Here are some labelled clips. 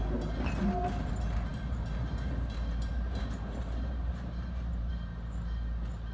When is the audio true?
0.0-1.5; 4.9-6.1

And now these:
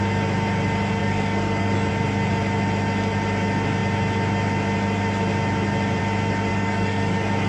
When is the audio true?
0.0-1.0; 1.9-6.5

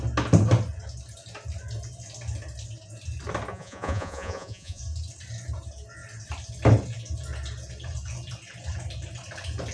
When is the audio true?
0.0-3.5; 4.8-9.7

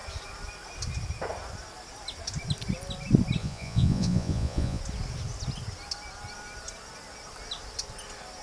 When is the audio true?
0.0-3.4; 4.8-8.4

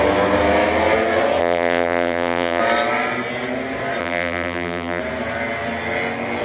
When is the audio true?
0.0-1.4; 2.6-4.0; 5.0-6.4

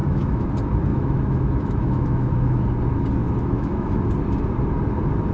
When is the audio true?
0.5-0.9; 2.6-3.2; 4.0-5.3

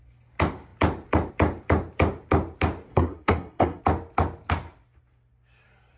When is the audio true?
0.0-2.9; 3.8-6.0